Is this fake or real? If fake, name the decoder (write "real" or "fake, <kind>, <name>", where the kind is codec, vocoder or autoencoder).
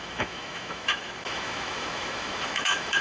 fake, autoencoder, DAC-VAE